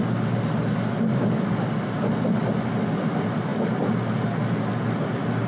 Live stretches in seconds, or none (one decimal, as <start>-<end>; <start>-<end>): 0.0-5.5